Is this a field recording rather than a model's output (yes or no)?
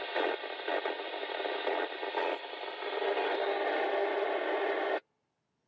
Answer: yes